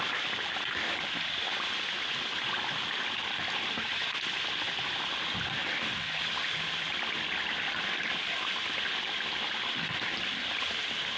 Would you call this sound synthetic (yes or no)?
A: no